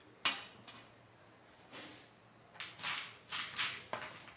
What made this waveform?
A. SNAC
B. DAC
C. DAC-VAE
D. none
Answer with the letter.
D